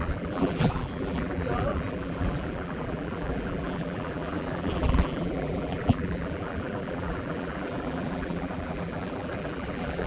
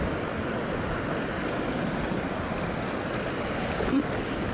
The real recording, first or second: second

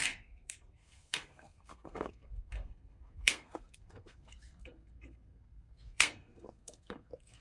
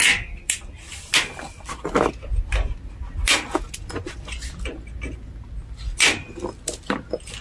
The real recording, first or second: second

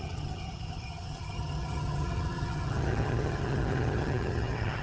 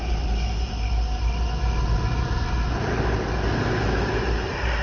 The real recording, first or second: second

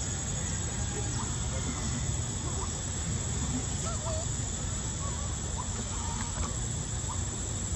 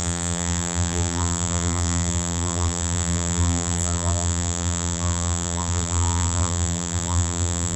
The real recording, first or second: first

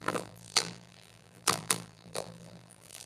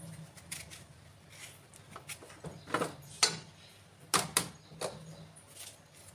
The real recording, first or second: second